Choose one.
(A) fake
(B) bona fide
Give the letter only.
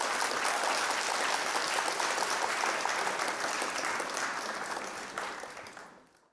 B